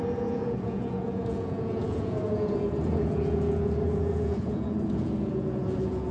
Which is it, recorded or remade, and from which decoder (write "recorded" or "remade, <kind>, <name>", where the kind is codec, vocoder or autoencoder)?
remade, vocoder, Vocos